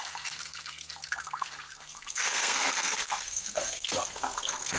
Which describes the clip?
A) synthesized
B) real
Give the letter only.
A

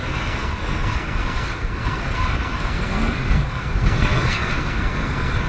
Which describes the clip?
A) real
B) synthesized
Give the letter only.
B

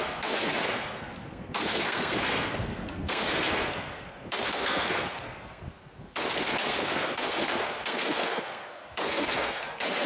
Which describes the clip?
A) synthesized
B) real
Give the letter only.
A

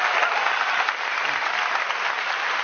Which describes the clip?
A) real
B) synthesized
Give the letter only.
A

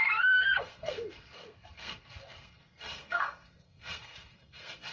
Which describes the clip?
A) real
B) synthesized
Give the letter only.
B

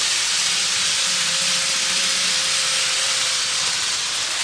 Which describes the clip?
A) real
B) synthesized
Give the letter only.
A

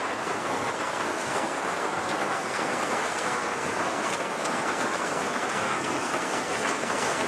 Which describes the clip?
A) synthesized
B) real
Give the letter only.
A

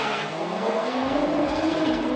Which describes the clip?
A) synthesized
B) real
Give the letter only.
A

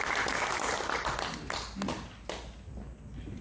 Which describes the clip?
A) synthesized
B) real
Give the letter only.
B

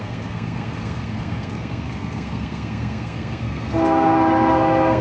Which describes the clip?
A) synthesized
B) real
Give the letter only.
A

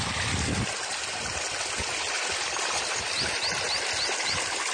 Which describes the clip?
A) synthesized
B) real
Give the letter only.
B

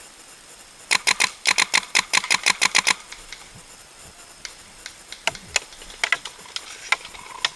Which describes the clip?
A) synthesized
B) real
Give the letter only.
B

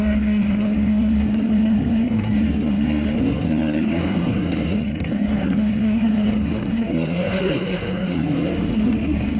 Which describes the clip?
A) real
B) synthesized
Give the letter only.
B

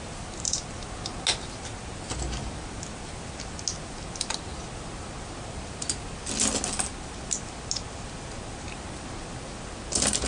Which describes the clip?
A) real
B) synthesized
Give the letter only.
A